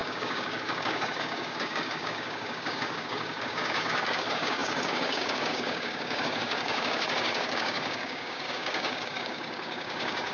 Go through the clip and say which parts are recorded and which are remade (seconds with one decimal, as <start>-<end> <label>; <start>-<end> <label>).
0.0-10.3 remade